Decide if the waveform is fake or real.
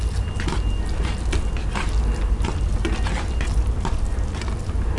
real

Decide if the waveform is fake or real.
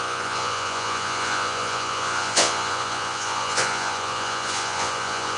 fake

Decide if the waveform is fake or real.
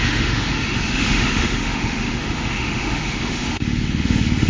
fake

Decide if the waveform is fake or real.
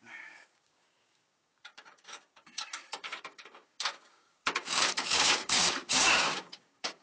fake